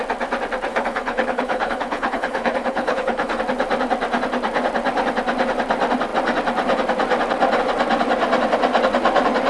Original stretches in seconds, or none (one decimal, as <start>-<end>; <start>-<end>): 0.0-0.7; 3.4-9.5